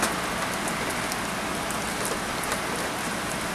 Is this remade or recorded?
recorded